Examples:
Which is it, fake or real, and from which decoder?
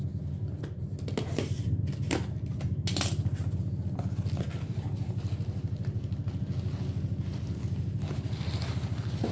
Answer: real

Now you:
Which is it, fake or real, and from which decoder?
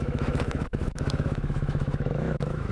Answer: fake, autoencoder, DAC-VAE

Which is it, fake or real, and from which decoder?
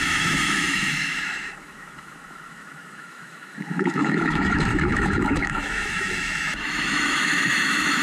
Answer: fake, autoencoder, DAC-VAE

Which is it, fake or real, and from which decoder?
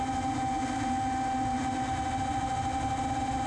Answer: real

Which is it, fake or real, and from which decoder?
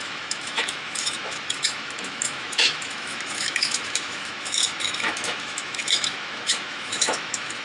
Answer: fake, autoencoder, DAC-VAE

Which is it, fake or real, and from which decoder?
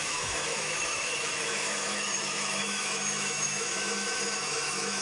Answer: fake, autoencoder, DAC-VAE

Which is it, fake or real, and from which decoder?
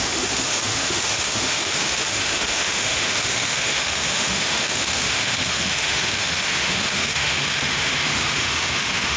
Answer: fake, autoencoder, DAC-VAE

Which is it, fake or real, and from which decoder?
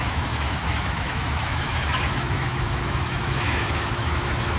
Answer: fake, autoencoder, DAC-VAE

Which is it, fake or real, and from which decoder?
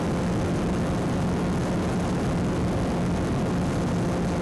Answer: real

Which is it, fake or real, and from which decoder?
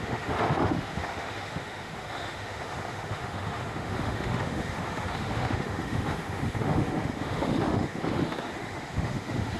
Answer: fake, autoencoder, DAC-VAE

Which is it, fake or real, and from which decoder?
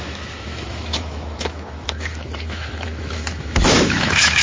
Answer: fake, autoencoder, DAC-VAE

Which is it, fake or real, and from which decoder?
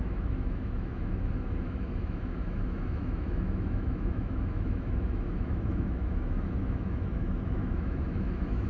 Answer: fake, autoencoder, DAC-VAE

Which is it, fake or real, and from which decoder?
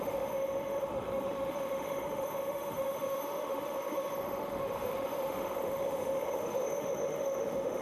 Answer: fake, autoencoder, DAC-VAE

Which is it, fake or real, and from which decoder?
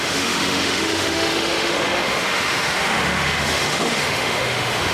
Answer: fake, autoencoder, DAC-VAE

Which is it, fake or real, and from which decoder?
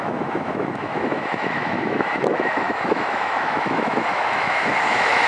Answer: fake, autoencoder, DAC-VAE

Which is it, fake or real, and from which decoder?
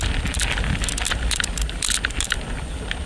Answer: real